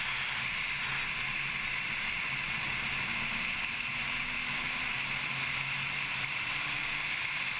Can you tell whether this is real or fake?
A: real